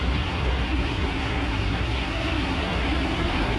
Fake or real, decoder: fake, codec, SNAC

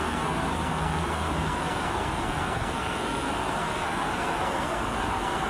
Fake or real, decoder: fake, codec, SNAC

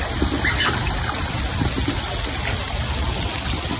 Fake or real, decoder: real